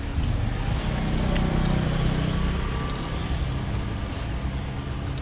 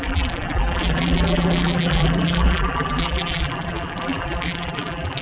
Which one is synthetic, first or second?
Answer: second